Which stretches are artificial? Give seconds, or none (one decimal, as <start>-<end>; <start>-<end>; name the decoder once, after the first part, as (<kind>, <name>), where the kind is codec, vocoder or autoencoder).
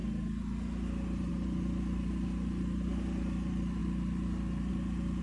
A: none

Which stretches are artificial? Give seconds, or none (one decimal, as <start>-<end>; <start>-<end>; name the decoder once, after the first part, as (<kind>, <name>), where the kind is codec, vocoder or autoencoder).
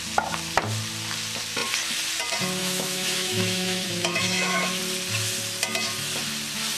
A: 2.6-4.8 (autoencoder, DAC-VAE)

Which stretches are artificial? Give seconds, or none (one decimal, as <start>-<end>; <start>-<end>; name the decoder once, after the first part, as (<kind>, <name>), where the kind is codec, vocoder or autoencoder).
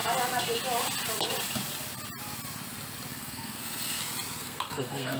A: 3.1-4.0 (codec, SNAC); 4.4-5.2